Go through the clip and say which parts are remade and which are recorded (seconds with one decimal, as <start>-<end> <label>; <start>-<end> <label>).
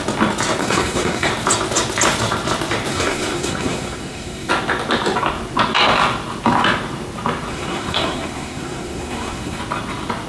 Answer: 0.0-0.6 recorded; 0.6-1.3 remade; 1.3-2.9 recorded; 2.9-4.5 remade; 4.5-7.5 recorded; 7.5-9.6 remade; 9.6-10.3 recorded